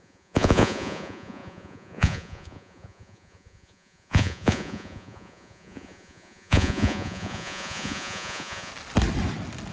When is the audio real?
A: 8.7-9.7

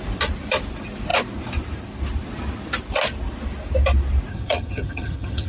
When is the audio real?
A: 0.0-4.3

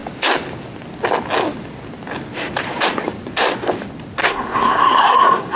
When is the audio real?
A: 0.0-4.2

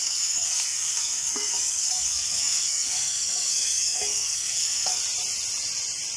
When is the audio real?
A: 5.0-6.2

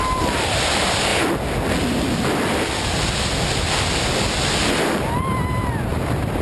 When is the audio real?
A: 1.1-4.8

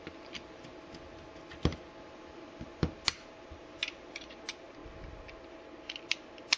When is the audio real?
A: 0.7-2.0; 4.8-6.0